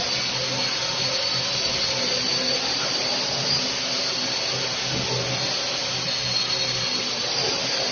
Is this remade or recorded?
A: recorded